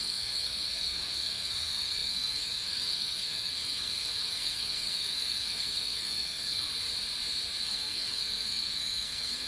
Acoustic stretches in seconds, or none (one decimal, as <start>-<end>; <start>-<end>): 6.7-7.6